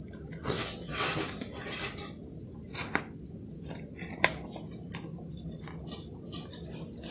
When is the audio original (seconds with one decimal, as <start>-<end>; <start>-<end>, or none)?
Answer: 0.0-0.4; 1.1-7.1